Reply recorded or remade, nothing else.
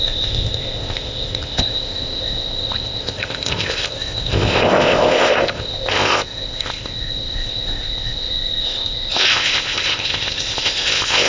remade